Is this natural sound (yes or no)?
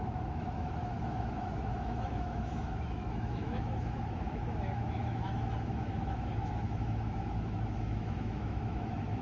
no